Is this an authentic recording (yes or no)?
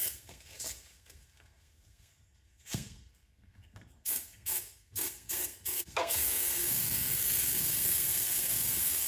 no